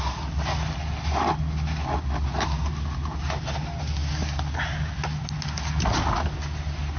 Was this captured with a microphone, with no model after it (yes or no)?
yes